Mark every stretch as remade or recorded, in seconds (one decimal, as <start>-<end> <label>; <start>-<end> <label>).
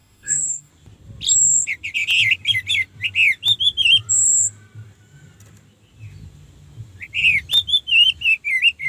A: 0.0-0.7 remade; 0.7-8.9 recorded